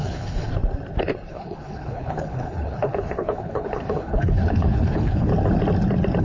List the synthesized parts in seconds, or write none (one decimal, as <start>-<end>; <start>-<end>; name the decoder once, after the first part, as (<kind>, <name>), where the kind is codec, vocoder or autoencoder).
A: 0.0-0.5 (codec, HILCodec); 1.3-5.3